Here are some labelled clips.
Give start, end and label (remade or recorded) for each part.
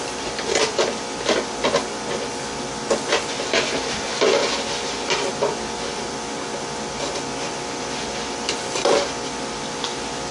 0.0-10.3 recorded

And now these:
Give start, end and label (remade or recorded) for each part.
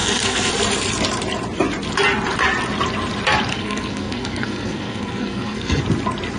0.0-0.5 remade; 0.5-3.5 recorded; 3.5-5.8 remade; 5.8-6.4 recorded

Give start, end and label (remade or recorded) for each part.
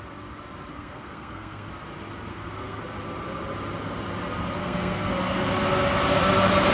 0.0-0.7 recorded; 0.7-1.7 remade; 1.7-2.3 recorded; 2.3-2.8 remade; 2.8-4.6 recorded; 4.6-5.1 remade; 5.1-6.7 recorded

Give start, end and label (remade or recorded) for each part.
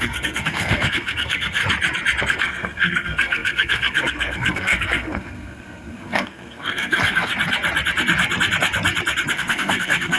0.0-1.6 remade; 1.6-2.2 recorded; 2.2-7.3 remade; 7.3-9.3 recorded; 9.3-10.2 remade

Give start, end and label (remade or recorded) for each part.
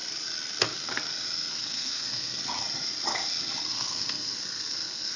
0.0-1.5 recorded; 1.5-2.4 remade; 2.4-3.7 recorded; 3.7-5.2 remade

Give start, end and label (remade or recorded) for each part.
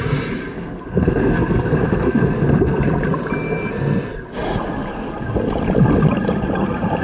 0.0-0.4 recorded; 0.4-2.8 remade; 2.8-7.0 recorded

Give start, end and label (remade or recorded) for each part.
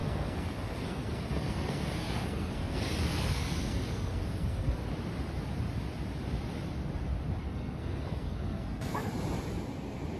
0.0-4.9 remade; 4.9-7.4 recorded; 7.4-9.1 remade; 9.1-10.2 recorded